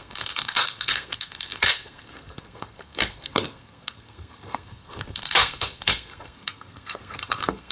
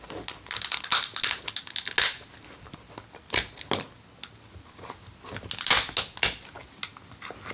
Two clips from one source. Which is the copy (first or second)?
first